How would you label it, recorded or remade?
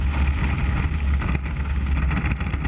recorded